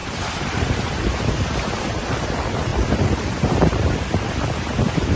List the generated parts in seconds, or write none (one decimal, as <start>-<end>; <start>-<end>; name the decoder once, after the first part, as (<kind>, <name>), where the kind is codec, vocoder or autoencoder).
0.0-0.7 (vocoder, BigVGAN v2); 2.7-4.3